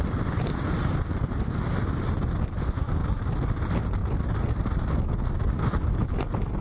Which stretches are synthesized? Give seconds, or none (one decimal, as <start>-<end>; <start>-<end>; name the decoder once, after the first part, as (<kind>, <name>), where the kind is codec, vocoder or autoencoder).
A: none